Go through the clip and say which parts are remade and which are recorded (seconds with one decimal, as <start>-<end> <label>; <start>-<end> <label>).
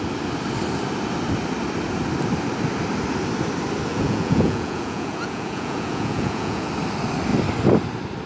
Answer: 0.0-3.9 recorded; 3.9-6.7 remade; 6.7-8.3 recorded